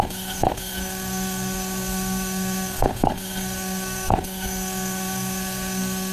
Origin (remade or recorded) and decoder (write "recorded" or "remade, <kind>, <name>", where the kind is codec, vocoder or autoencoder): remade, codec, SNAC